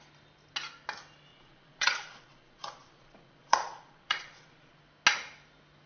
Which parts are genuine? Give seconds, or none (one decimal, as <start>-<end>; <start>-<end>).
0.0-1.3; 4.8-5.9